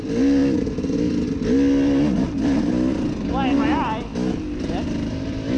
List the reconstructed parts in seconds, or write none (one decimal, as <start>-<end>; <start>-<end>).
none